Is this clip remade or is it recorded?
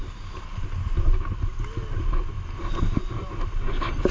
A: recorded